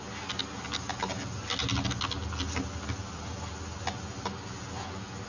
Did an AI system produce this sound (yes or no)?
no